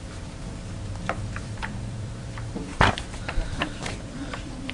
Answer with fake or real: fake